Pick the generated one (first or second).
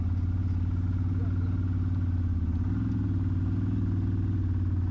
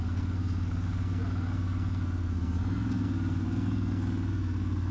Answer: second